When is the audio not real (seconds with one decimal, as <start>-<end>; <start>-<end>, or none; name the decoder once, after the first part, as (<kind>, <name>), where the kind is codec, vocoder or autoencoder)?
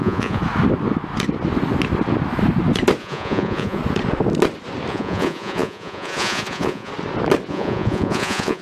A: 0.0-0.4 (vocoder, Vocos); 3.0-3.8; 4.9-6.9; 7.5-8.6